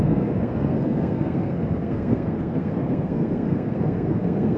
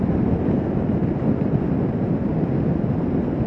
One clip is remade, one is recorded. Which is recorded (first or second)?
second